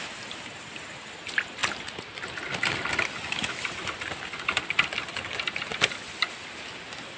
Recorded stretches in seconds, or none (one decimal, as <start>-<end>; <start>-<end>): 0.0-7.2